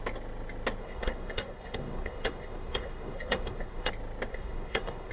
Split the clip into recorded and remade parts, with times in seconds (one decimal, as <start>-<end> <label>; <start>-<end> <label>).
0.0-0.8 recorded; 0.8-3.9 remade; 3.9-4.3 recorded; 4.3-5.1 remade